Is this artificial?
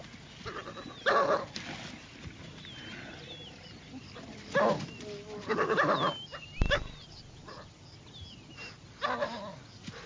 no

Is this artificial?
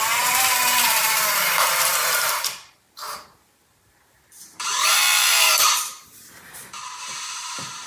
yes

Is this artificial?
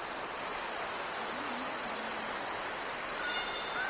no